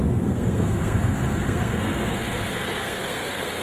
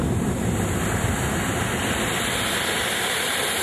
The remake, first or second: first